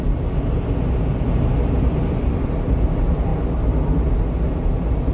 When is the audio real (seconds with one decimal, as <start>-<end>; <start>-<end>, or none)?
0.0-5.1